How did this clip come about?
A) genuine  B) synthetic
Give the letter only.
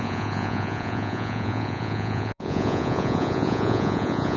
B